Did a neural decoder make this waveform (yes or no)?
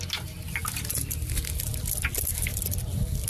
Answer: no